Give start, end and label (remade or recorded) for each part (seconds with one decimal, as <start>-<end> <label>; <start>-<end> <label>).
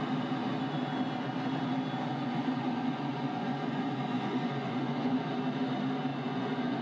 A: 0.0-2.1 recorded; 2.1-5.3 remade; 5.3-6.1 recorded; 6.1-6.8 remade